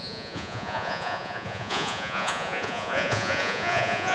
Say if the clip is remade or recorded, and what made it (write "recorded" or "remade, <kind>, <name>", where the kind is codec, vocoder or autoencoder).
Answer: remade, vocoder, Vocos